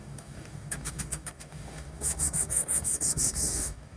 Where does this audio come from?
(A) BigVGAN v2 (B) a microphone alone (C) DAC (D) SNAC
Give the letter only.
C